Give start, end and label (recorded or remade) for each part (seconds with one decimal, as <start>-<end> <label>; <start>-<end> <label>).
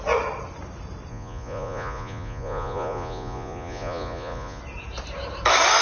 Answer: 0.0-1.1 recorded; 1.1-4.6 remade; 4.6-5.8 recorded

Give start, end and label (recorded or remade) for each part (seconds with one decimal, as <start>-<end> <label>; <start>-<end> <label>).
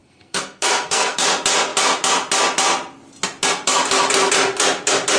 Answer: 0.0-1.2 remade; 1.2-5.2 recorded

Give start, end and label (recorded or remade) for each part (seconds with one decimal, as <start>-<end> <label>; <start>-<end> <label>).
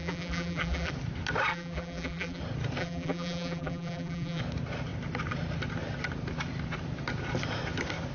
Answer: 0.0-0.9 remade; 0.9-1.5 recorded; 1.5-2.4 remade; 2.4-2.8 recorded; 2.8-4.4 remade; 4.4-8.1 recorded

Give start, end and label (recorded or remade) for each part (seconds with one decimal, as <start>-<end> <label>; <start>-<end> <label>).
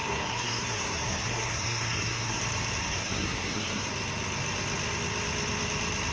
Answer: 0.0-2.4 remade; 2.4-2.8 recorded; 2.8-3.9 remade; 3.9-6.1 recorded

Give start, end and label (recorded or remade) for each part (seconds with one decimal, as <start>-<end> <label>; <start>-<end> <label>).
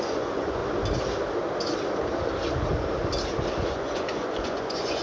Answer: 0.0-0.6 remade; 0.6-3.6 recorded; 3.6-5.0 remade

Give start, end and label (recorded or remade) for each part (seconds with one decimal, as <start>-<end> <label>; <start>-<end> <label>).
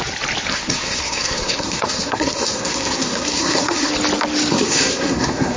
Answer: 0.0-0.5 recorded; 0.5-3.9 remade; 3.9-4.5 recorded; 4.5-5.6 remade